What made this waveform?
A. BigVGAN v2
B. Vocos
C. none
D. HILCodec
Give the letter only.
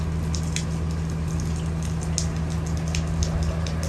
C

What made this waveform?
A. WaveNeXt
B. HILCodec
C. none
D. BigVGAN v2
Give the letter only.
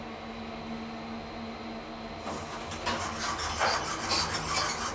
C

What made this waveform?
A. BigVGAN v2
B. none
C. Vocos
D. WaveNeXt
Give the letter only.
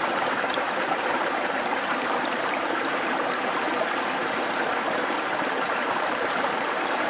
A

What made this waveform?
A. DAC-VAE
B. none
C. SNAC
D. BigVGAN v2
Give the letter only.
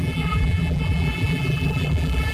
D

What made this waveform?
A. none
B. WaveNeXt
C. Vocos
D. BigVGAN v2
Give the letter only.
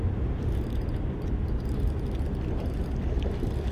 A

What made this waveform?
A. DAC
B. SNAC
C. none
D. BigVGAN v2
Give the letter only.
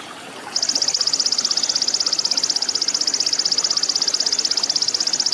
C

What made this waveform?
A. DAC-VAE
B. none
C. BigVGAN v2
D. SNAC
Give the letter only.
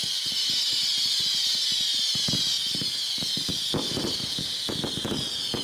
B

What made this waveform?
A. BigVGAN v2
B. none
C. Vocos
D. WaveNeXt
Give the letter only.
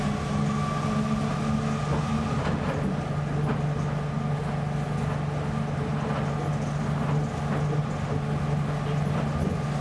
B